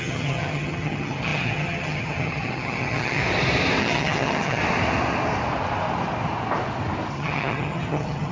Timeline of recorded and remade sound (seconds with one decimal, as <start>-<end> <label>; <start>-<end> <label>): 0.0-3.2 remade; 3.2-3.8 recorded; 3.8-4.6 remade; 4.6-7.1 recorded; 7.1-8.3 remade